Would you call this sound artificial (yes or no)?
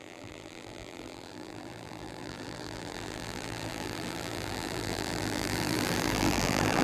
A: yes